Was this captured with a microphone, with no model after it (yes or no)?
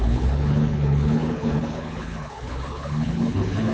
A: no